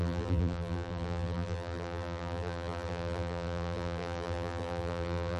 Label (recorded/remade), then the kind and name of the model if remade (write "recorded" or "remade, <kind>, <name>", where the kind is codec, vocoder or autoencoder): remade, vocoder, BigVGAN v2